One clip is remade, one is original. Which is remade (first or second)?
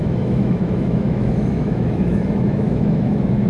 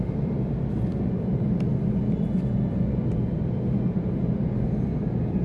first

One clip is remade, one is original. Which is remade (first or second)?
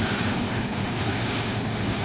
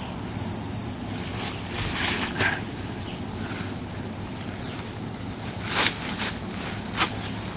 first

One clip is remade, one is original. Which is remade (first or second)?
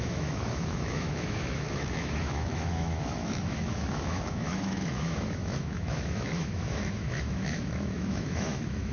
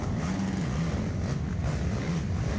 first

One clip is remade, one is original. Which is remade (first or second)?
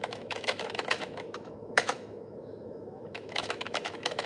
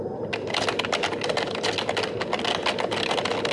first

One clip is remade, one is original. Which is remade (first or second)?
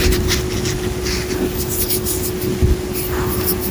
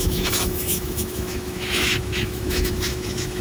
second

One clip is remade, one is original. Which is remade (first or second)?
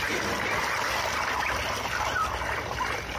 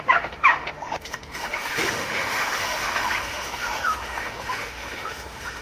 second